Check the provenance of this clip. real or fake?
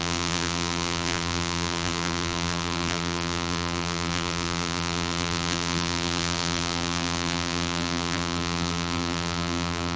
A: fake